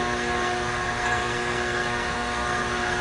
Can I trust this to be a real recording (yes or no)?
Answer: no